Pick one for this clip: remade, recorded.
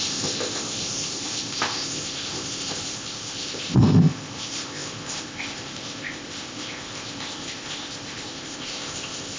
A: remade